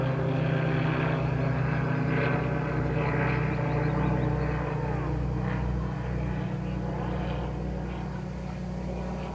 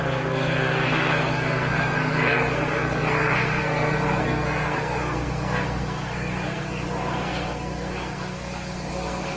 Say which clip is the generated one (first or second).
second